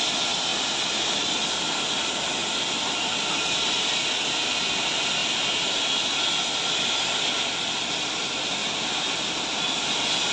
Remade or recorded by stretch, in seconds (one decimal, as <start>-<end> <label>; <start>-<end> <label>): 0.0-10.3 recorded